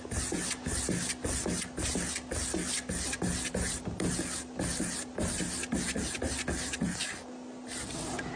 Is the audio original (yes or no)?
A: yes